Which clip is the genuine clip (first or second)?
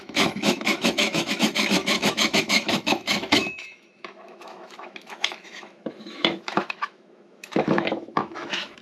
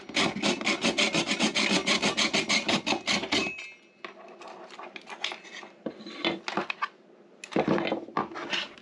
second